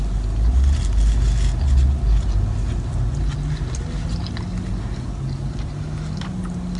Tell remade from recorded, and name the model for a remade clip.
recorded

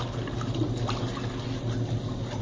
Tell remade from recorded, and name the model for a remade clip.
recorded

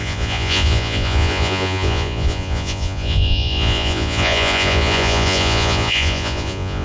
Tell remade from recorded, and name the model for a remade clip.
remade, vocoder, Vocos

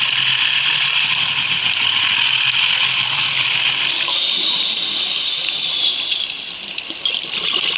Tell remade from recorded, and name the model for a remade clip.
recorded